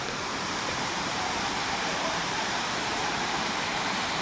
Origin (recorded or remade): remade